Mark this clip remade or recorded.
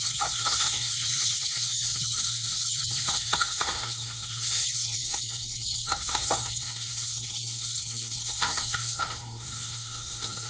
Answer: remade